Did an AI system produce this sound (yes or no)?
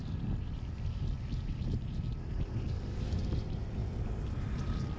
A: no